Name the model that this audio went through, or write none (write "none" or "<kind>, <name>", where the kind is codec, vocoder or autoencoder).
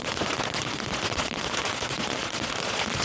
vocoder, Vocos